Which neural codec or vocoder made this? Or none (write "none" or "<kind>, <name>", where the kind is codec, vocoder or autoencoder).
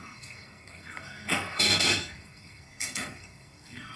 codec, SNAC